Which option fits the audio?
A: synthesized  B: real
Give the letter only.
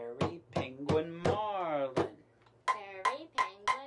B